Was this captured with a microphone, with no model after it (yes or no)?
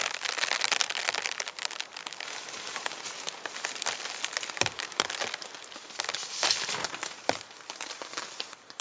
yes